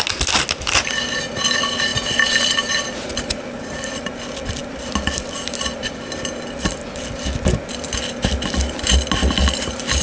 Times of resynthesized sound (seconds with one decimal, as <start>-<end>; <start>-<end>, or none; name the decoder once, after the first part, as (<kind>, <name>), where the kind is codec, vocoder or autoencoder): none